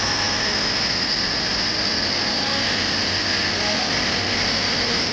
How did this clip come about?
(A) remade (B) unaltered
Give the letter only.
B